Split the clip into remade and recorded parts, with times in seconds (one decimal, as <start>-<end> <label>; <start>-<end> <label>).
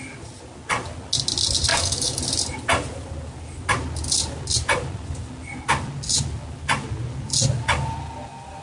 0.0-1.7 recorded; 1.7-2.2 remade; 2.2-8.6 recorded